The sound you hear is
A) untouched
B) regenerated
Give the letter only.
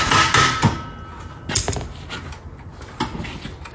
A